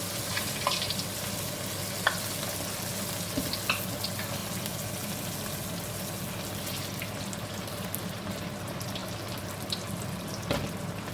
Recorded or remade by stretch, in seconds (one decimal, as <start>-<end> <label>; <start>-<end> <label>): 0.0-11.1 recorded